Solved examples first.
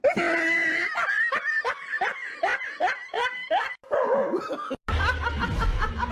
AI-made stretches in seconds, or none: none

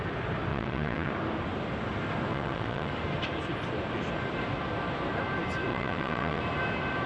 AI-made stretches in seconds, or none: 0.5-1.1 (vocoder, WaveNeXt); 2.3-2.9; 5.7-6.4

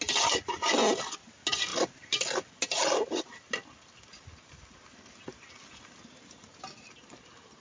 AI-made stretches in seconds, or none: none